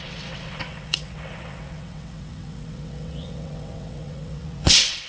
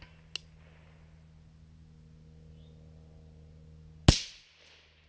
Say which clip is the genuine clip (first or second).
second